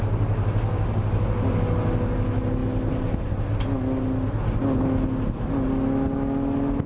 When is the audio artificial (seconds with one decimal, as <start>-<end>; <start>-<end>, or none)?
none